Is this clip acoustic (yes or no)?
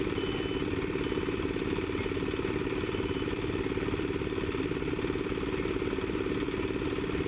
yes